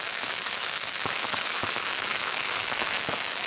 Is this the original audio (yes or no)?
no